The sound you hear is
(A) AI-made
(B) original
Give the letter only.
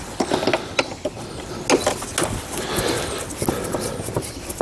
B